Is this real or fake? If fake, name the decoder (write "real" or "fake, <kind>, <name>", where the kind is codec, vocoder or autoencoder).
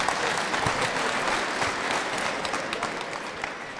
real